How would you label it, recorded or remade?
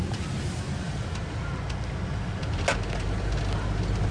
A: recorded